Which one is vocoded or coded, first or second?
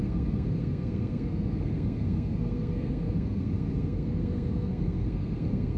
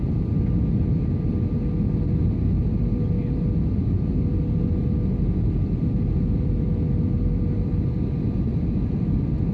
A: first